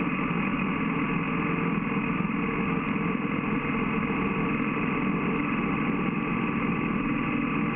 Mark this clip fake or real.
real